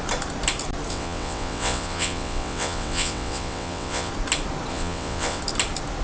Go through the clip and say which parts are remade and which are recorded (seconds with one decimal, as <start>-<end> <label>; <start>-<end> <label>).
0.0-0.9 recorded; 0.9-4.1 remade; 4.1-4.7 recorded; 4.7-5.4 remade; 5.4-6.0 recorded